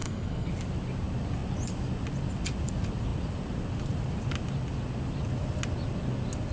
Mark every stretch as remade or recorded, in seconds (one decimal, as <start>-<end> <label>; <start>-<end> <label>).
0.0-0.5 remade; 0.5-6.5 recorded